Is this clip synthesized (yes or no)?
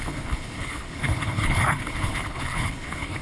yes